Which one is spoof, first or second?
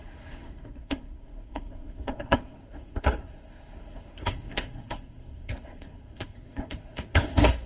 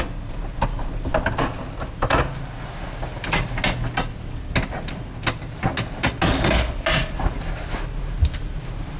first